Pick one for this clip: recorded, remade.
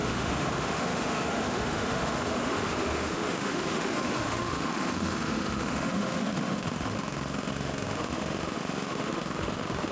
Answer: remade